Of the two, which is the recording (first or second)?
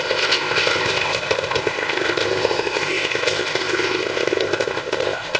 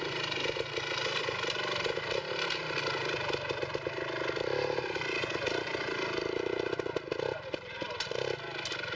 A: second